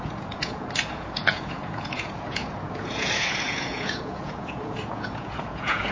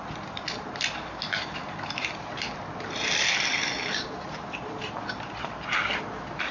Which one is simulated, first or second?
first